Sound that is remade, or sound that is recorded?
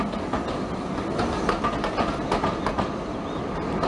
recorded